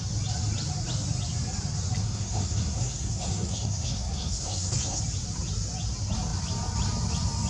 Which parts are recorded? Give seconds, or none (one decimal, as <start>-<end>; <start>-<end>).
0.0-2.0; 5.0-7.5